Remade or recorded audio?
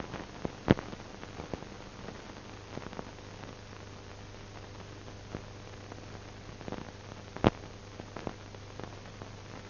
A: recorded